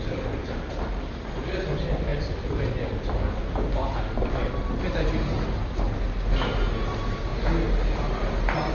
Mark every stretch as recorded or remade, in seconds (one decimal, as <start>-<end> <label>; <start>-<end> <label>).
0.0-8.7 recorded